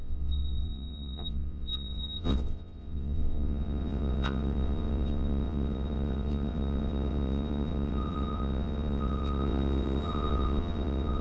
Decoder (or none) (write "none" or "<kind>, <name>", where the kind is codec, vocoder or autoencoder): vocoder, WaveNeXt